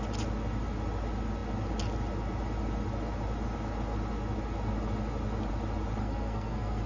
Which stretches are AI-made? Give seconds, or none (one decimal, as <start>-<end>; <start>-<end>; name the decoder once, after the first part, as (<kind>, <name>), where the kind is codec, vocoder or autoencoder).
6.0-6.9 (codec, SNAC)